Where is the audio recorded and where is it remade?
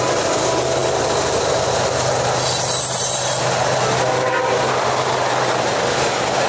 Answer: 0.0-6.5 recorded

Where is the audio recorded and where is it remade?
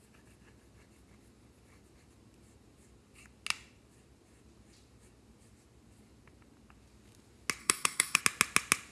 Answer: 0.0-7.6 recorded; 7.6-8.2 remade; 8.2-8.9 recorded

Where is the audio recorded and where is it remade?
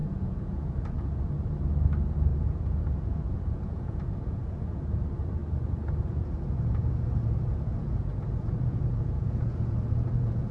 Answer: 0.0-1.2 remade; 1.2-2.3 recorded; 2.3-5.0 remade; 5.0-5.4 recorded; 5.4-10.5 remade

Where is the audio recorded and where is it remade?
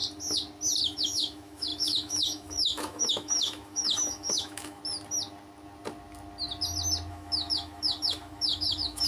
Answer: 0.0-0.8 recorded; 0.8-4.8 remade; 4.8-7.1 recorded; 7.1-9.1 remade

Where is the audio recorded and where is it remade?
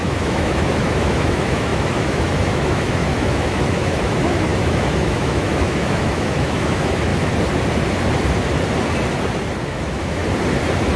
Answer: 0.0-7.1 remade; 7.1-9.7 recorded; 9.7-10.2 remade; 10.2-11.0 recorded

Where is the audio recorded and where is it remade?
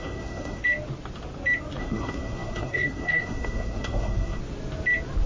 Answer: 0.0-0.6 remade; 0.6-1.8 recorded; 1.8-4.4 remade; 4.4-5.3 recorded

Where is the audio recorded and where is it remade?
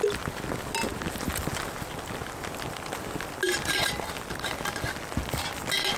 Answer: 0.0-0.9 recorded; 0.9-1.5 remade; 1.5-6.0 recorded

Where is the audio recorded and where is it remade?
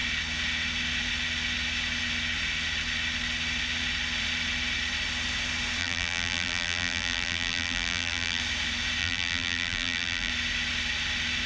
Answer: 0.0-5.8 recorded; 5.8-8.4 remade; 8.4-9.0 recorded; 9.0-10.3 remade; 10.3-11.5 recorded